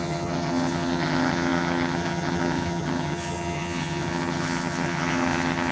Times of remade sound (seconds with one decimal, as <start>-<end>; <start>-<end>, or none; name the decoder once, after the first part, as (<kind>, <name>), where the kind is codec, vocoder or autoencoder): 0.0-5.7 (vocoder, HiFi-GAN)